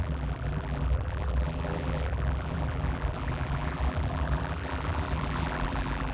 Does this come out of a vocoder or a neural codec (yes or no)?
yes